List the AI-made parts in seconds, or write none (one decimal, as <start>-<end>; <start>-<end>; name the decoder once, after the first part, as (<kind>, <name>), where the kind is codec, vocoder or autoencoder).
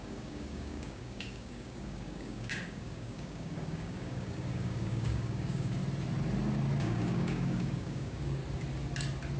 0.0-5.8 (codec, DAC); 6.8-8.4